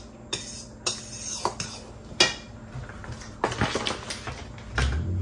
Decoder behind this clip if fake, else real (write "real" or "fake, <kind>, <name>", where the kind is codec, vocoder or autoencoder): real